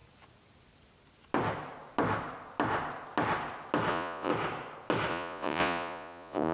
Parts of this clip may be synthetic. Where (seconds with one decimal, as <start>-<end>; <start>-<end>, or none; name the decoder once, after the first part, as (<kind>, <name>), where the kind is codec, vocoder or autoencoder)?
3.9-4.3 (vocoder, Vocos); 5.1-6.5